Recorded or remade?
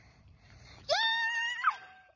remade